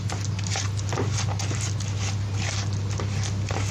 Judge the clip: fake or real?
real